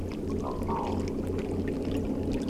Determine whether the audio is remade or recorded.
recorded